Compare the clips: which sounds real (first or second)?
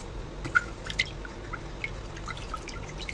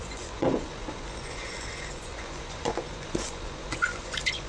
first